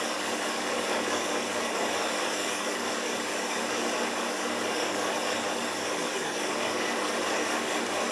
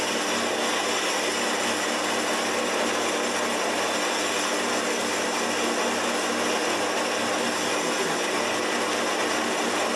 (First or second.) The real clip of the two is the second